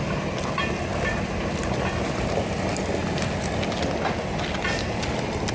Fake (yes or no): no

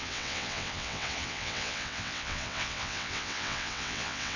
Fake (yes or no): yes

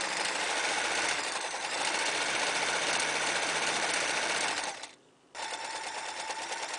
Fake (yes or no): no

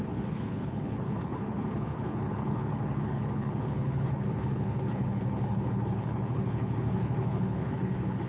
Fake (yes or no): yes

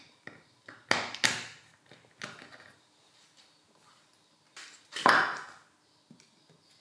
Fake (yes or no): no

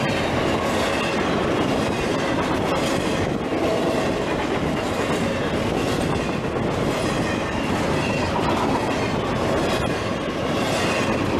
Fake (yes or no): no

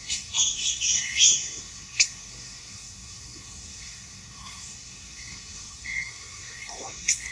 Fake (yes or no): yes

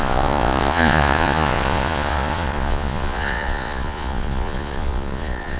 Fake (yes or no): yes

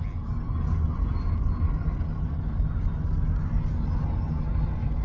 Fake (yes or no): no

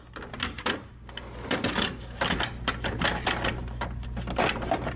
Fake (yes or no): no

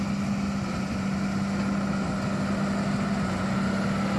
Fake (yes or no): no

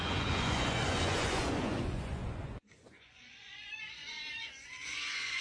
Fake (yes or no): yes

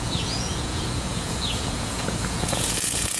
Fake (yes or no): yes